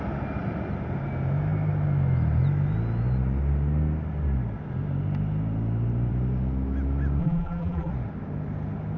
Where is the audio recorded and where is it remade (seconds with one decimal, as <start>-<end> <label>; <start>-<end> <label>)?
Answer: 0.0-7.2 recorded; 7.2-7.9 remade; 7.9-9.0 recorded